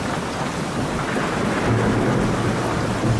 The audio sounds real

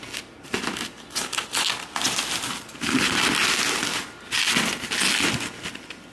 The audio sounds real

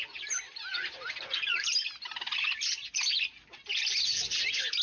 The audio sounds real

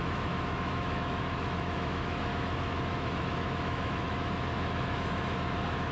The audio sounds fake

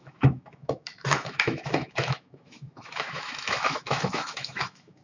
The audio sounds fake